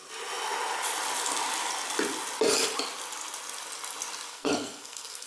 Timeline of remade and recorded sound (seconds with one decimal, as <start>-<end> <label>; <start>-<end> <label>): 0.0-4.3 recorded; 4.3-5.3 remade